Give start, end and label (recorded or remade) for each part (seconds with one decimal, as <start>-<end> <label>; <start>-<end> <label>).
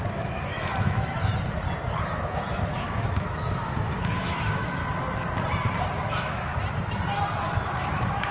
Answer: 0.0-1.3 remade; 1.3-2.0 recorded; 2.0-4.8 remade; 4.8-6.1 recorded; 6.1-6.5 remade; 6.5-7.4 recorded; 7.4-8.3 remade